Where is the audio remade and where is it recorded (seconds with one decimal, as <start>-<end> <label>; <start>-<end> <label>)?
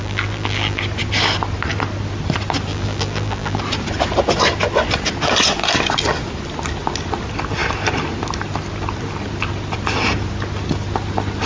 0.0-0.8 remade; 0.8-2.7 recorded; 2.7-3.6 remade; 3.6-11.5 recorded